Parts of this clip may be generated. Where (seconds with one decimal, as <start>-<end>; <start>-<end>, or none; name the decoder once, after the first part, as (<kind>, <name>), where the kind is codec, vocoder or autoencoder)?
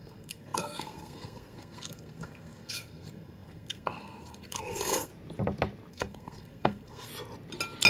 0.0-5.1 (codec, SNAC); 5.9-7.1